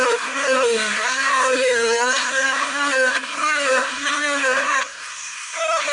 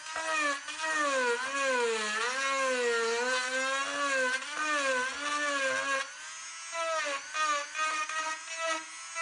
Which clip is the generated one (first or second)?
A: first